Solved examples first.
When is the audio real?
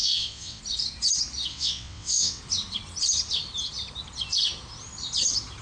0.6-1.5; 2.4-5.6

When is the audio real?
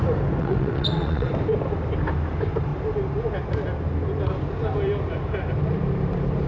0.0-0.4; 1.3-6.5